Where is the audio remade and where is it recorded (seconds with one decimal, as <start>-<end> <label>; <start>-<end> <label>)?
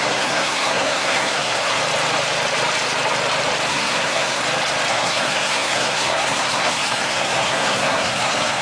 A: 0.0-1.8 remade; 1.8-3.7 recorded; 3.7-4.4 remade; 4.4-4.9 recorded; 4.9-8.6 remade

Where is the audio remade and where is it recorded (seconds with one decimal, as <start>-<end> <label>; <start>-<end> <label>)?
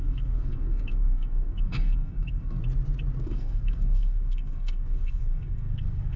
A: 0.0-2.6 remade; 2.6-3.2 recorded; 3.2-6.2 remade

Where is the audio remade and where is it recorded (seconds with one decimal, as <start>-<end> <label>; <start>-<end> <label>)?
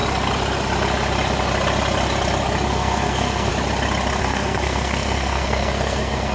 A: 0.0-2.7 recorded; 2.7-3.5 remade; 3.5-4.2 recorded; 4.2-6.3 remade